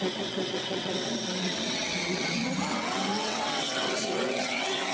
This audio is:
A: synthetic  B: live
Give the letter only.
A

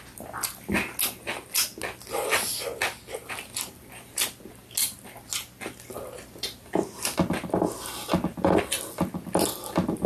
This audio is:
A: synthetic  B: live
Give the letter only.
B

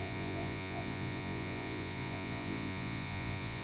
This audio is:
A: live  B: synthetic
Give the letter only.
B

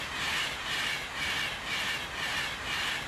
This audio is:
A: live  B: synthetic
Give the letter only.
A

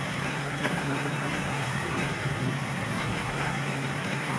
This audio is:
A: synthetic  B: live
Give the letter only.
A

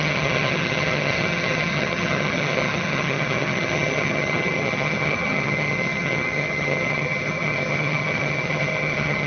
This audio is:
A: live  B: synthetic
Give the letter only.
B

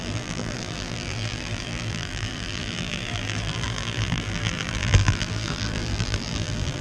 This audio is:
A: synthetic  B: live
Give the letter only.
A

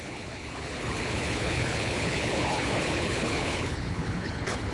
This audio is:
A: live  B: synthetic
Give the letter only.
B